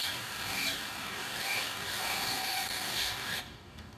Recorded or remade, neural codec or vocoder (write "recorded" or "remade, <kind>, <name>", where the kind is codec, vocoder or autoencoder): remade, codec, DAC